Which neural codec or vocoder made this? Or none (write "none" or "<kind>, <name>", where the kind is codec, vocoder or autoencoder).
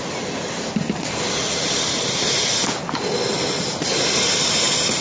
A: none